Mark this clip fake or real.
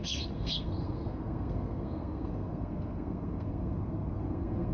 fake